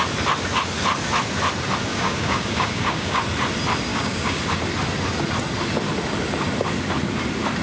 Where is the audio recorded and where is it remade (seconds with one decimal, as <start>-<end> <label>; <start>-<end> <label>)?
0.0-1.9 recorded; 1.9-3.2 remade; 3.2-3.9 recorded; 3.9-4.4 remade; 4.4-7.6 recorded